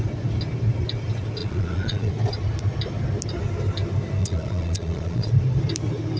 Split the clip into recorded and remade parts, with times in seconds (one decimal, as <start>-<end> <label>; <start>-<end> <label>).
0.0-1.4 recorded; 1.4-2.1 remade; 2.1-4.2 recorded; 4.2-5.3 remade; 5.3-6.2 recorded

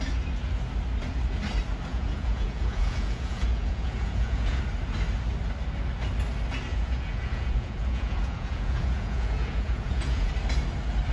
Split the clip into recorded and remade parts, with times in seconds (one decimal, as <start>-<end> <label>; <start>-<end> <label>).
0.0-1.9 recorded; 1.9-4.6 remade; 4.6-6.7 recorded; 6.7-10.3 remade; 10.3-11.1 recorded

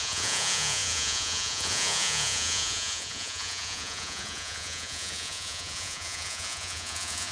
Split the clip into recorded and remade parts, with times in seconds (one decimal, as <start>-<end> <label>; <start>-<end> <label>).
0.0-7.3 remade

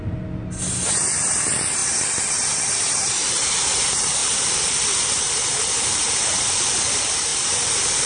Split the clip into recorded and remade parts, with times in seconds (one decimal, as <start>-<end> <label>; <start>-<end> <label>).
0.0-8.1 recorded

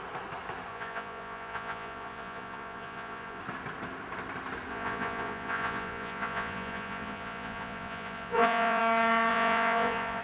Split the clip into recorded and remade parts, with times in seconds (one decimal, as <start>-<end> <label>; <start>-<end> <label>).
0.0-0.7 recorded; 0.7-3.4 remade; 3.4-4.7 recorded; 4.7-8.8 remade; 8.8-9.3 recorded; 9.3-10.2 remade

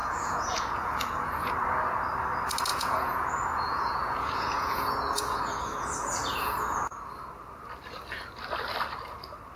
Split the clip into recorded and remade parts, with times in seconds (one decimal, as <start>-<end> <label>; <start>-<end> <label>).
0.0-1.5 remade; 1.5-2.7 recorded; 2.7-7.1 remade; 7.1-9.6 recorded